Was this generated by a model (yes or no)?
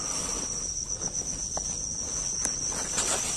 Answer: no